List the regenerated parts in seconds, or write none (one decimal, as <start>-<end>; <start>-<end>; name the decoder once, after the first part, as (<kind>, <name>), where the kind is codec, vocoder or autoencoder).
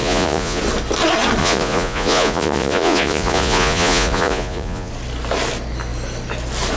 0.0-0.6 (vocoder, Vocos); 1.4-4.9